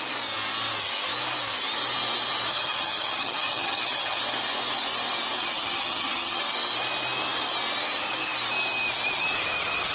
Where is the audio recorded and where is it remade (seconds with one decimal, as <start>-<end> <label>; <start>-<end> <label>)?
0.0-2.5 recorded; 2.5-4.2 remade; 4.2-5.4 recorded; 5.4-6.4 remade; 6.4-9.9 recorded